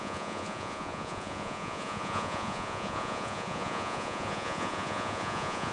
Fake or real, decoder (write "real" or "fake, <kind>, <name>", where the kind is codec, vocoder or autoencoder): fake, vocoder, Vocos